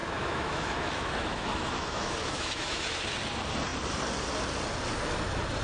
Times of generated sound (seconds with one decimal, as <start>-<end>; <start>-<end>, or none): 0.0-3.0